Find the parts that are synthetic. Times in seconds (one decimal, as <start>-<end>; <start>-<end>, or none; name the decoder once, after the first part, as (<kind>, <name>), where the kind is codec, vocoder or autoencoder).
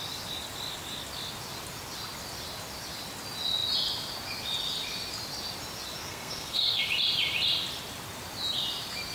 6.0-6.8 (codec, SNAC)